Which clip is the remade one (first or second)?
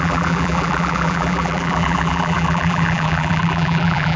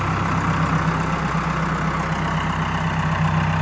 first